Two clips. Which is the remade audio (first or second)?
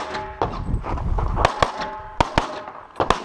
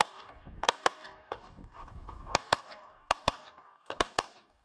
second